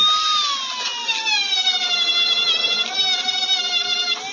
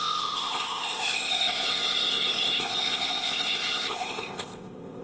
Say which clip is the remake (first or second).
second